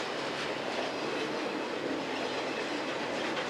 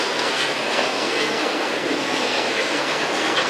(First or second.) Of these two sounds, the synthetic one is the second